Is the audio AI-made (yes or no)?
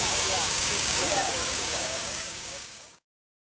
yes